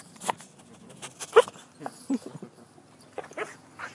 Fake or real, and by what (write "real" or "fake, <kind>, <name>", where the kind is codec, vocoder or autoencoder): real